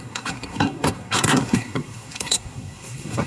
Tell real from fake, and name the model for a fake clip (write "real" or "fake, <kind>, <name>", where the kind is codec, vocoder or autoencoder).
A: fake, codec, SNAC